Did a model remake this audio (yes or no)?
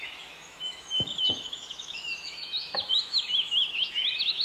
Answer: yes